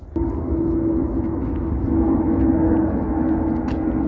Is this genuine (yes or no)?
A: yes